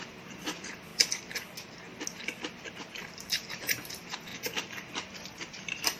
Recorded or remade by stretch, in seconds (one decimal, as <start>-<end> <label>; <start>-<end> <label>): 0.0-0.9 remade; 0.9-2.7 recorded; 2.7-4.3 remade; 4.3-5.4 recorded; 5.4-6.0 remade